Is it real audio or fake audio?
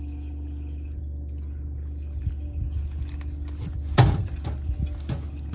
real